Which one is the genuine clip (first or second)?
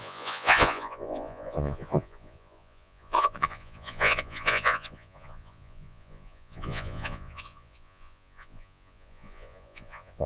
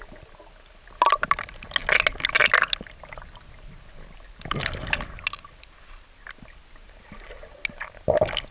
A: second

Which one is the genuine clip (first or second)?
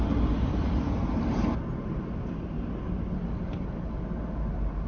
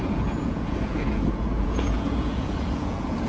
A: first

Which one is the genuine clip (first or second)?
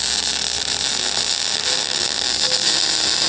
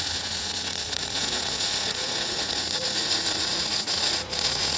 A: first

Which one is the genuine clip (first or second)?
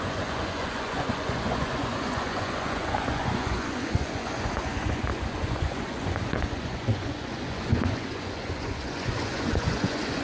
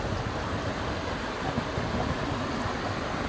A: second